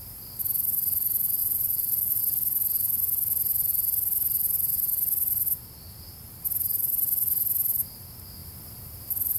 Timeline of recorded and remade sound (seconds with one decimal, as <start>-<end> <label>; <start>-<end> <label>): 0.0-1.4 recorded; 1.4-2.2 remade; 2.2-9.4 recorded